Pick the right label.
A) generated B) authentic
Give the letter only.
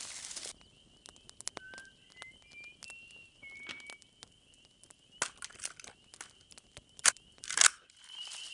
B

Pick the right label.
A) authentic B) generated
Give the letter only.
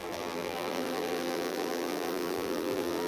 B